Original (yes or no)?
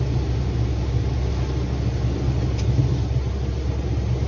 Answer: yes